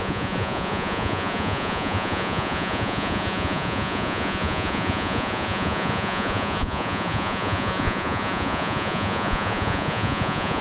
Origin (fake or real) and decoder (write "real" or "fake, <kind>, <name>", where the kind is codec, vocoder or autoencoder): fake, vocoder, Vocos